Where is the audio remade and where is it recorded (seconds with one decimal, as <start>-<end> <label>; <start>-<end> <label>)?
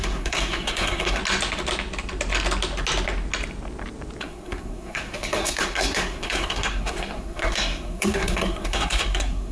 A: 0.0-1.2 remade; 1.2-4.2 recorded; 4.2-9.5 remade